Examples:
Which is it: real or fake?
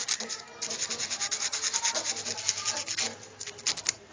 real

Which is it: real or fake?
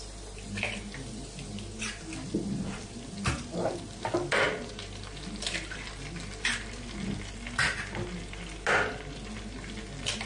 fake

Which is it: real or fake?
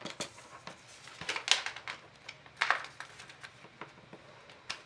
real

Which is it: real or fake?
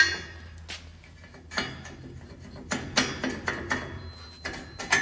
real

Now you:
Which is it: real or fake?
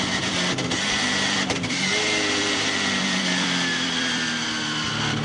fake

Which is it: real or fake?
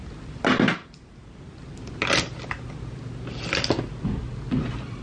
real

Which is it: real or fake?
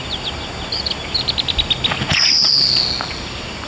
real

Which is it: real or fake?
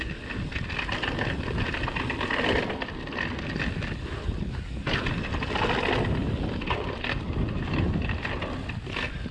real